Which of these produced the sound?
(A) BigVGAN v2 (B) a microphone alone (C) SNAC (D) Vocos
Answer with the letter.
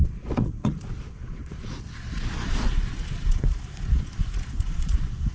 D